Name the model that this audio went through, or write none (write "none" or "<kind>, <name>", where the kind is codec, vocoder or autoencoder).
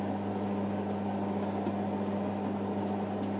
none